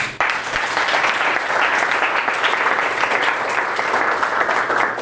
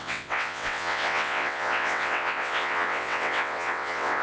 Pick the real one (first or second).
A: first